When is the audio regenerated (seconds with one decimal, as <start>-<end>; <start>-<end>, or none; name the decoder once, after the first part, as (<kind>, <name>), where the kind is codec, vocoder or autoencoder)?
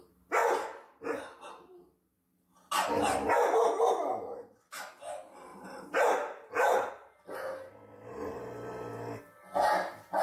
0.4-1.7 (vocoder, BigVGAN v2); 5.5-6.9